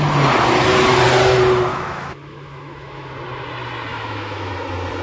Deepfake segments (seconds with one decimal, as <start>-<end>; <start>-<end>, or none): 1.7-3.1; 3.9-4.5

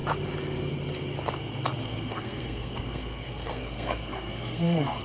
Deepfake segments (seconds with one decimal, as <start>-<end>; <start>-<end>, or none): 1.8-5.0

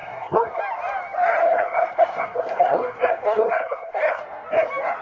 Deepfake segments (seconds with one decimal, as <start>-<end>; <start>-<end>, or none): 0.0-0.6; 1.4-4.2

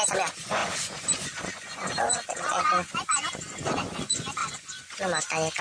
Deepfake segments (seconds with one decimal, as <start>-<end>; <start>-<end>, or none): 0.0-5.6

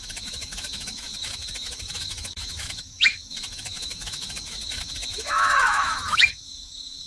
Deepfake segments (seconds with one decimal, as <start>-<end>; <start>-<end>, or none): 0.0-7.1

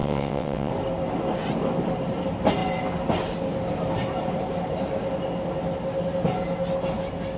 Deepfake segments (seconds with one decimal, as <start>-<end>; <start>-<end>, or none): 0.0-0.7

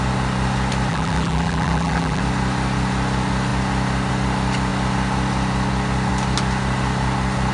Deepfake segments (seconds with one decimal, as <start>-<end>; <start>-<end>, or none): 0.9-2.2